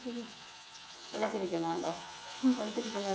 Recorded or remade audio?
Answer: remade